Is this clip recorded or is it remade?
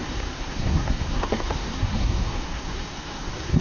remade